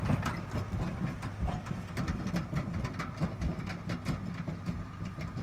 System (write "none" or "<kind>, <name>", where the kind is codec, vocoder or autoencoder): none